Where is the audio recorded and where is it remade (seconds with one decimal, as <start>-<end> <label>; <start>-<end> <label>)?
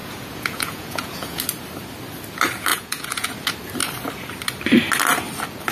0.0-1.4 remade; 1.4-2.7 recorded; 2.7-3.3 remade; 3.3-5.7 recorded